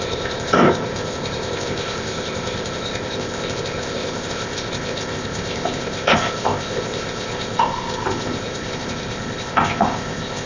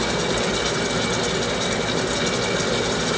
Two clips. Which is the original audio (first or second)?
second